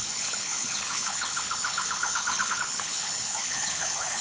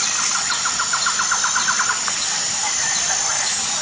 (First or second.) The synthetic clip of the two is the first